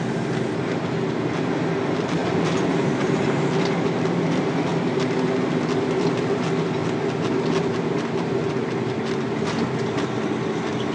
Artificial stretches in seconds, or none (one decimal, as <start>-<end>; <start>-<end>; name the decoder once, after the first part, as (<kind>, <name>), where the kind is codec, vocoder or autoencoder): 2.2-2.9 (vocoder, BigVGAN v2)